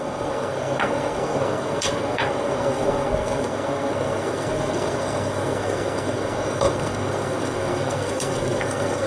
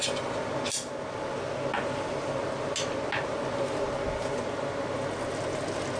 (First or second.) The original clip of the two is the second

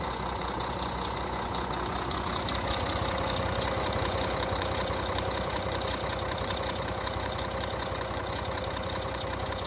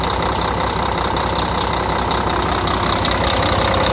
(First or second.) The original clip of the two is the second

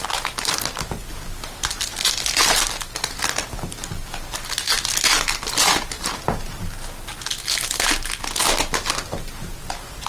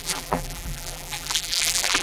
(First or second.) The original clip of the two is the first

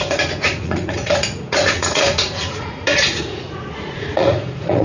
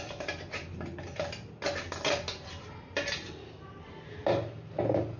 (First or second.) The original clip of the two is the second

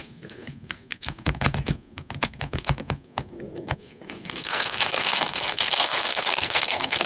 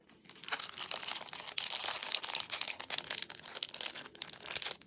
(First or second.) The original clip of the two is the second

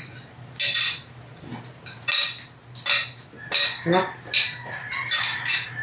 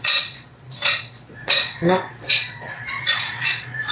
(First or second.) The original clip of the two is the first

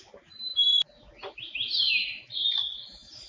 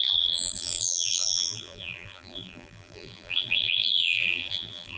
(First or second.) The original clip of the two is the first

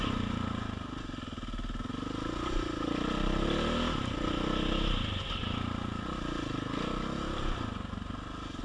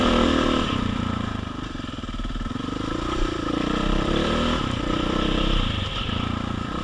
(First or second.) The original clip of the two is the first